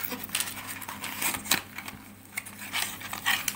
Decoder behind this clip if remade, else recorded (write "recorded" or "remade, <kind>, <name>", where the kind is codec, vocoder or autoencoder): recorded